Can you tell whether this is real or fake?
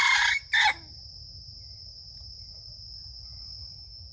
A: real